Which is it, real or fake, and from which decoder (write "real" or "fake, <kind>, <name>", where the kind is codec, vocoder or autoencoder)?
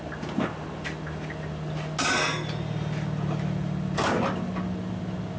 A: real